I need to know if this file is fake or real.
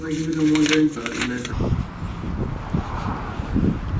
real